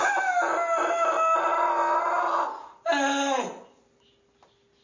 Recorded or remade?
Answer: recorded